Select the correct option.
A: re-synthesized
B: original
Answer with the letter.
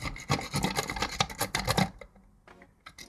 B